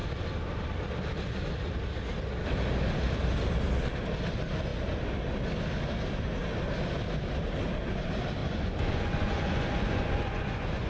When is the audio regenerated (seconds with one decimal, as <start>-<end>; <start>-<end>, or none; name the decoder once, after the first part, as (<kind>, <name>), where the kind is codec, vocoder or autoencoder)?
8.4-10.9 (vocoder, Vocos)